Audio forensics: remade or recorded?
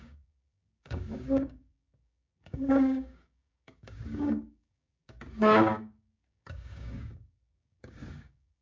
remade